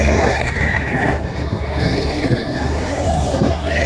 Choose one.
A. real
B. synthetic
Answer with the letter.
B